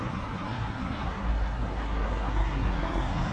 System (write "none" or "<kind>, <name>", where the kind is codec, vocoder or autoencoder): codec, SNAC